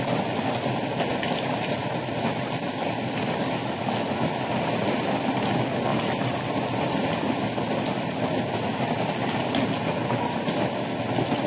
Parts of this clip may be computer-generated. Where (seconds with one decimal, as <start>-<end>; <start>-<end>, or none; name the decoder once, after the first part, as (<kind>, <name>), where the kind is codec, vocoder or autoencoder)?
1.1-2.1 (vocoder, BigVGAN v2)